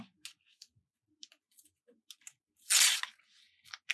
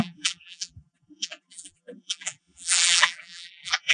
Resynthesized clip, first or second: second